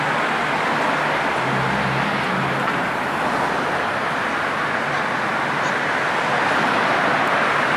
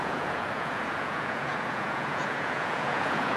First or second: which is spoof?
second